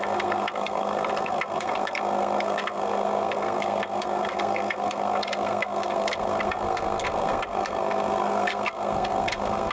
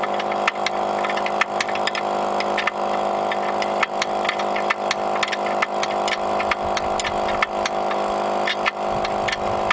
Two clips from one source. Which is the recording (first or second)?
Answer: second